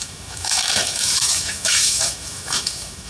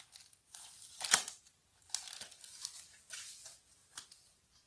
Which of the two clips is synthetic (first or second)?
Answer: first